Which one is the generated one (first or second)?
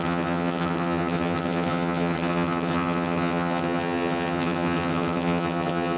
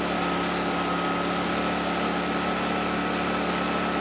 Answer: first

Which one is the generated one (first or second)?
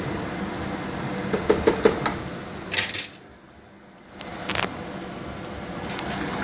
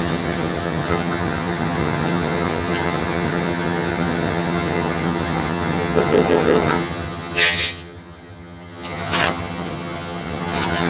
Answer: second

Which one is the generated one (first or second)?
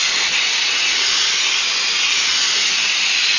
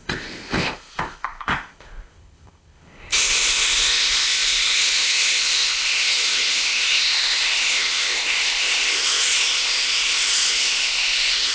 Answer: second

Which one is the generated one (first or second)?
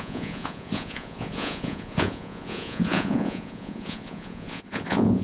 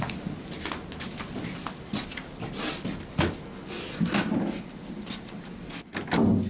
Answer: first